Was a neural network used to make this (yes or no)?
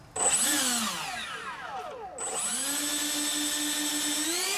no